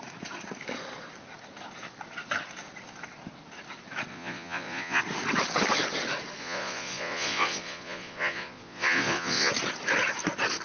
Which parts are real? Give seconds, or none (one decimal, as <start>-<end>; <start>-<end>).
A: 0.0-4.1; 5.0-6.4; 9.5-10.6